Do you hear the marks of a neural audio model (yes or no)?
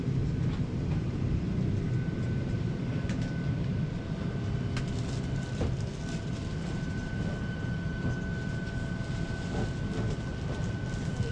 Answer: no